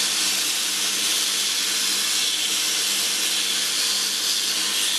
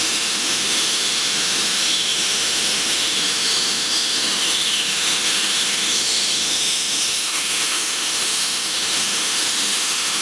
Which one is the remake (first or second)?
second